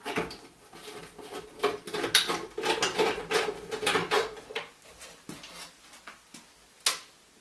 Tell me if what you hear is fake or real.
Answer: real